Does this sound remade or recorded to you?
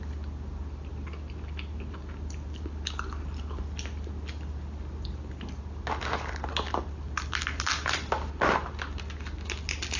recorded